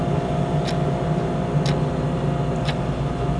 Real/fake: real